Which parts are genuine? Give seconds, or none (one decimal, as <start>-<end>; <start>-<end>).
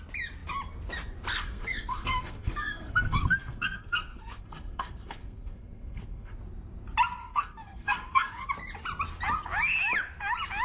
0.0-1.3; 6.3-7.2; 8.5-10.6